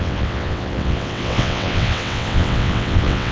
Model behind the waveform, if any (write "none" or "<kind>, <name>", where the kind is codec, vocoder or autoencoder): vocoder, WaveNeXt